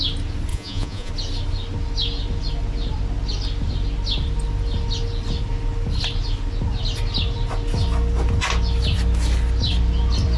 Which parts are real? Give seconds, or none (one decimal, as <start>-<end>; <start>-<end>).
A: 0.0-0.5; 1.1-10.4